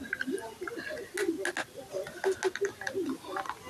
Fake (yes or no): no